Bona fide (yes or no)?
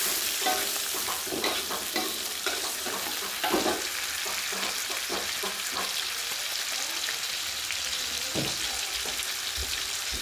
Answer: yes